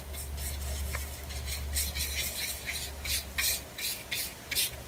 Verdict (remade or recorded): recorded